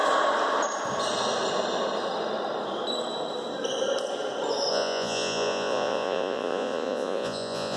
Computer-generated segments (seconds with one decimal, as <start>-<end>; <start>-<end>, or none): 4.7-7.8